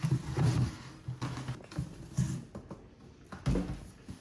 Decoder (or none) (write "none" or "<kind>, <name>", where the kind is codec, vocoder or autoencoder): none